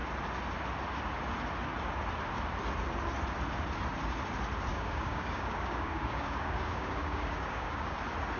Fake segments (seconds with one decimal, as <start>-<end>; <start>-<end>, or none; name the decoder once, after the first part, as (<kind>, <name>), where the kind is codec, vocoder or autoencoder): 4.7-8.0 (codec, DAC)